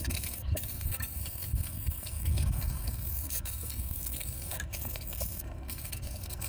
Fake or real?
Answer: fake